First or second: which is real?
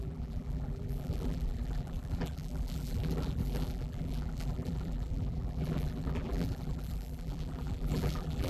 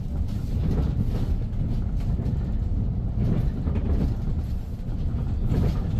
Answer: second